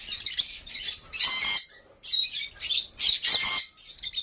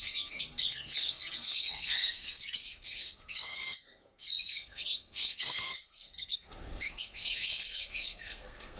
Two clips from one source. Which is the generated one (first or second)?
second